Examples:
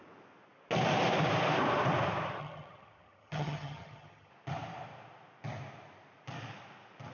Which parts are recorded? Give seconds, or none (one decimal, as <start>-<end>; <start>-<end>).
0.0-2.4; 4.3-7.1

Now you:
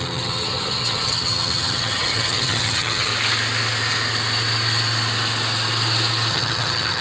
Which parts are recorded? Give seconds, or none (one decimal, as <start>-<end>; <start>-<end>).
3.1-6.3

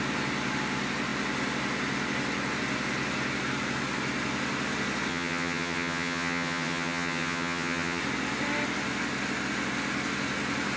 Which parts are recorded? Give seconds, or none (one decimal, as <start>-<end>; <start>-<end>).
0.0-5.1; 8.0-10.8

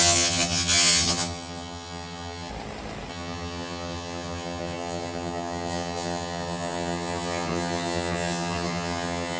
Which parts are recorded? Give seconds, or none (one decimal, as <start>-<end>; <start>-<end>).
2.5-3.1